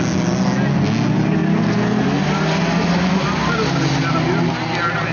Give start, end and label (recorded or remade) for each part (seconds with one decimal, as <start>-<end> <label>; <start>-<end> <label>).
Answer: 0.0-5.1 recorded